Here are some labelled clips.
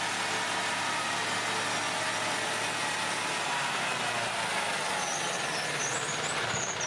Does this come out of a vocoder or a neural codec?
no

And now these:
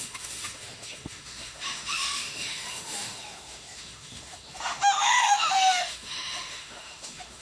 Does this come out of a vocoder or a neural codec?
yes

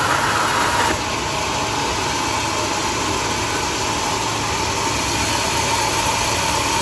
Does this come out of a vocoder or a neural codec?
no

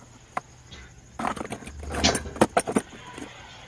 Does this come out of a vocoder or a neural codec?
no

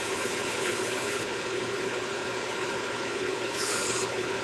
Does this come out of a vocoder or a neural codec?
yes